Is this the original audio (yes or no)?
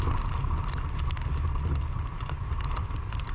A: yes